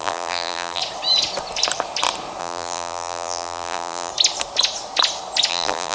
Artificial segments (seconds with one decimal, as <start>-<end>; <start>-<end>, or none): 0.0-0.8; 2.4-4.1; 5.5-5.9